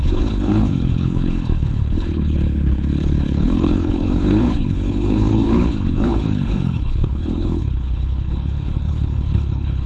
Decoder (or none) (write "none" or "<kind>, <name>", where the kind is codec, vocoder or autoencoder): codec, HILCodec